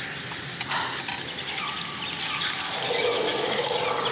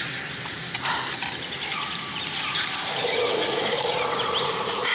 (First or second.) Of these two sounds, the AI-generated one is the second